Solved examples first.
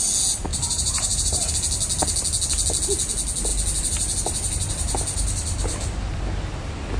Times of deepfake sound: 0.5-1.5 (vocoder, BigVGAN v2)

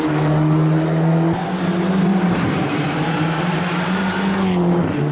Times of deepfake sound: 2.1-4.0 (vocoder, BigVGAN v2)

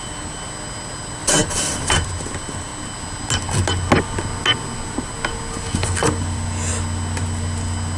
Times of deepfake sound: 1.2-1.9 (vocoder, BigVGAN v2); 6.0-6.7

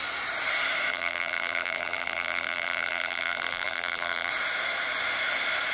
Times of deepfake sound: 0.9-4.3 (vocoder, BigVGAN v2)

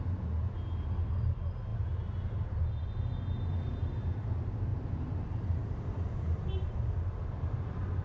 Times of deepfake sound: 1.7-2.6 (vocoder, BigVGAN v2); 4.7-6.4

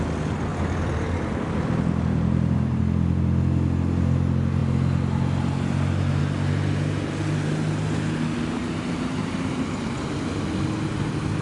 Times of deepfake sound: 0.5-2.8 (vocoder, BigVGAN v2); 8.6-9.9

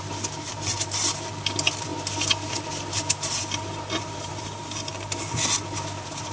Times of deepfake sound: 4.3-4.9 (vocoder, BigVGAN v2)